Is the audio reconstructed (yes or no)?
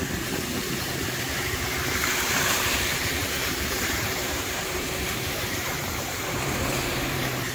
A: yes